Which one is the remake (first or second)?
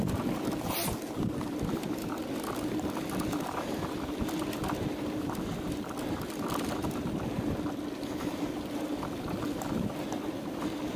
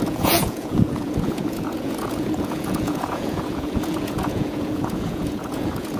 second